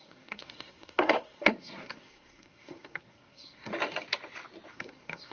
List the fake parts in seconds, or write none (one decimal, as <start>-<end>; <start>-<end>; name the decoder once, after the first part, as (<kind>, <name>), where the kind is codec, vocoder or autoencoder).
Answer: 0.0-3.7 (codec, SNAC); 4.7-5.3